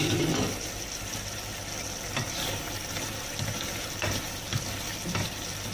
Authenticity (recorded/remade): recorded